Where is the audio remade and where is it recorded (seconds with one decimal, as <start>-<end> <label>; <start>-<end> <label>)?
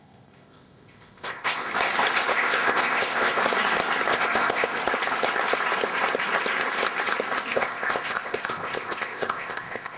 0.0-1.7 remade; 1.7-2.3 recorded; 2.3-3.4 remade; 3.4-4.1 recorded; 4.1-4.8 remade; 4.8-7.5 recorded; 7.5-10.0 remade